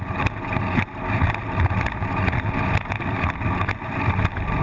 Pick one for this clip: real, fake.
real